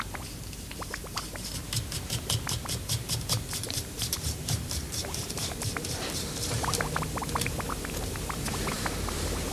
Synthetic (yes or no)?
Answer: yes